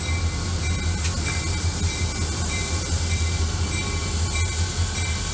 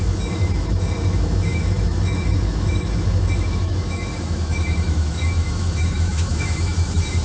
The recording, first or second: first